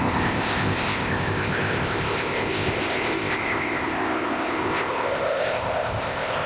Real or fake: fake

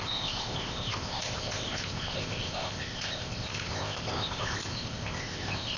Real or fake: fake